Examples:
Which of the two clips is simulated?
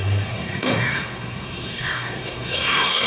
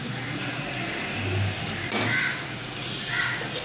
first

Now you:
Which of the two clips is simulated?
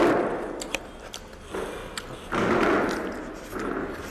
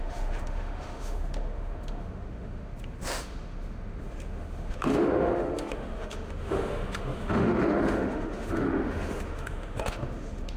second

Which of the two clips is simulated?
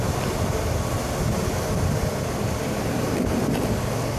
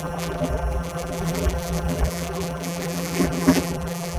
second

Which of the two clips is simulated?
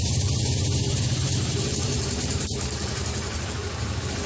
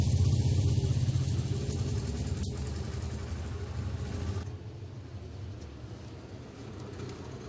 first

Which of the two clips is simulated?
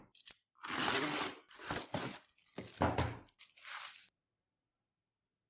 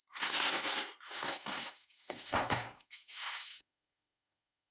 second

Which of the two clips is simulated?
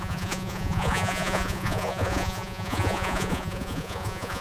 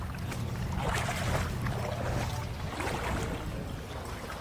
first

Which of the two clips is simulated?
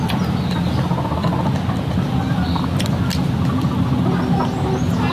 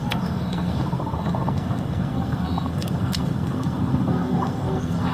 second